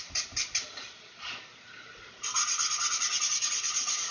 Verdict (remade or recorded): recorded